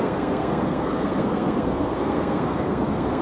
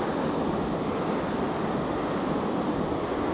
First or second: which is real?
second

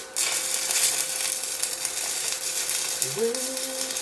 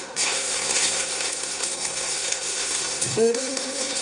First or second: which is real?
first